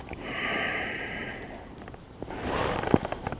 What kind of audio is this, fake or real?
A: fake